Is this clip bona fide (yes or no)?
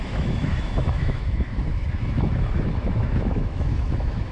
no